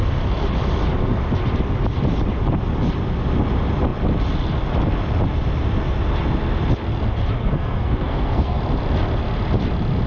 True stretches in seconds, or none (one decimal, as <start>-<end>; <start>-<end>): 0.0-7.4; 8.6-10.1